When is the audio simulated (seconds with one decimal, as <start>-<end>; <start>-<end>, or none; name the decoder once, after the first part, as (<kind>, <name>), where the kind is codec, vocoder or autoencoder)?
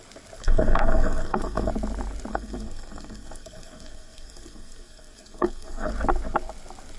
0.4-1.7 (codec, SNAC); 2.3-5.9